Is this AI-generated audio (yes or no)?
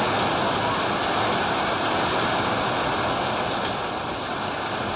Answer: no